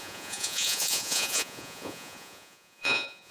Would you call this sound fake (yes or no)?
yes